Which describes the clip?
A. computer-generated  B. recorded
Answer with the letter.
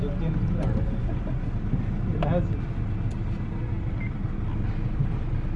B